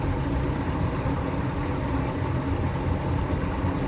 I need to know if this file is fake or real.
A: real